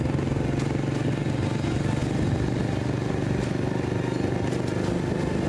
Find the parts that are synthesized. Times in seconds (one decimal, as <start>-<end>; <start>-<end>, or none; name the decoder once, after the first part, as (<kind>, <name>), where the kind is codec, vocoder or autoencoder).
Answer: none